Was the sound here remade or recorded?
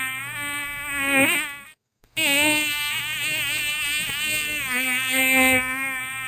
remade